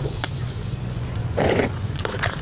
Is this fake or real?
fake